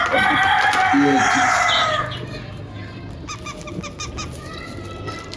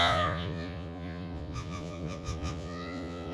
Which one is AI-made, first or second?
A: second